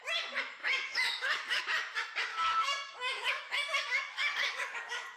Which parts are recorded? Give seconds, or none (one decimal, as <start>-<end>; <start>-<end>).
0.0-0.6; 1.6-2.3